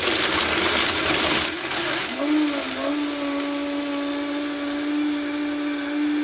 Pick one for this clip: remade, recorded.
recorded